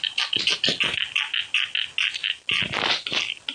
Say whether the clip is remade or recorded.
recorded